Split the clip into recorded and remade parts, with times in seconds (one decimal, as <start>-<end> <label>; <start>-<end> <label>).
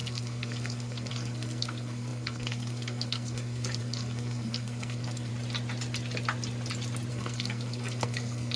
0.0-5.3 remade; 5.3-7.1 recorded; 7.1-8.6 remade